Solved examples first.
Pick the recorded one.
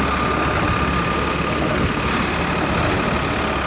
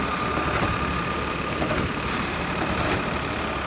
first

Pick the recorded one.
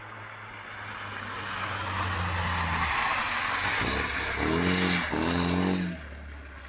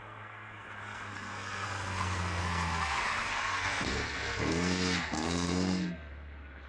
first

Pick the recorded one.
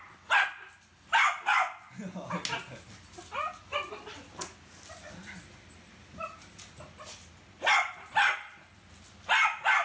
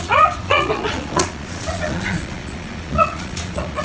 first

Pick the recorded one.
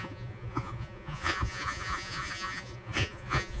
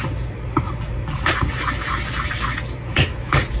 second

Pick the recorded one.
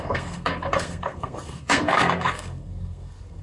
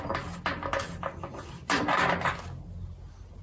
second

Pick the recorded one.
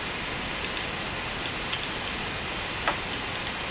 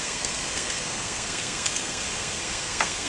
first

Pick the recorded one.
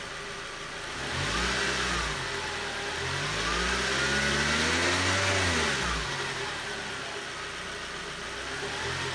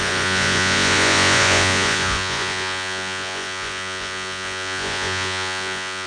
first